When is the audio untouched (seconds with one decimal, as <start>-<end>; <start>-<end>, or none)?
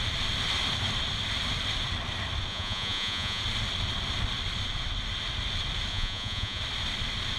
0.0-2.5; 3.4-5.9; 6.6-7.4